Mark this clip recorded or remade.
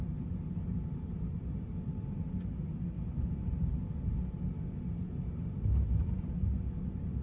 recorded